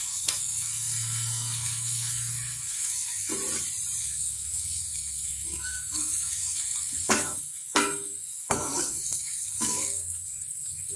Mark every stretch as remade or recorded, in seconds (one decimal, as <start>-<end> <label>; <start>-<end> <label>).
0.0-3.3 remade; 3.3-4.0 recorded; 4.0-11.0 remade